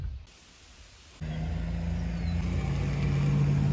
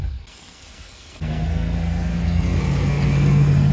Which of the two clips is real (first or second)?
first